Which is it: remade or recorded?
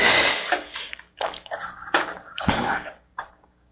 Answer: remade